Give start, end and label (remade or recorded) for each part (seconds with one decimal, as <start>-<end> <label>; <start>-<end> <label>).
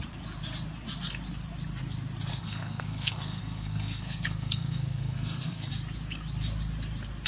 0.0-2.3 recorded; 2.3-5.7 remade; 5.7-7.3 recorded